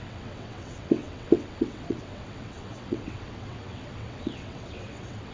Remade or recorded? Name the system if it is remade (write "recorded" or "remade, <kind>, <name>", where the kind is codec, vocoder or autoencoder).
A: remade, vocoder, WaveNeXt